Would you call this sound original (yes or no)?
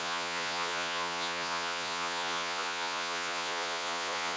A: no